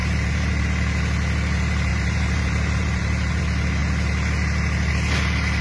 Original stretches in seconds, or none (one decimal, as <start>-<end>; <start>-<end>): 0.6-1.9; 3.4-5.6